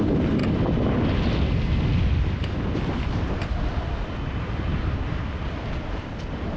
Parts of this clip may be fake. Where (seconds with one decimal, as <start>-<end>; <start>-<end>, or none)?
0.0-0.4; 4.4-6.6

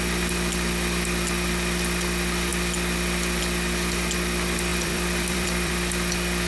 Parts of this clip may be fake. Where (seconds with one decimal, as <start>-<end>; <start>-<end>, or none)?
4.7-5.7